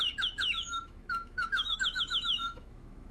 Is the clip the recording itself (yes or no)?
no